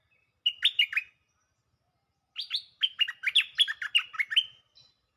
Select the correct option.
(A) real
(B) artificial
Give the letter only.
A